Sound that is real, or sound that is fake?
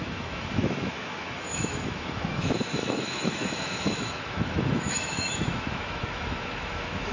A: fake